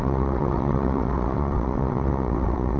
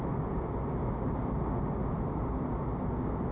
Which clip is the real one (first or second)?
second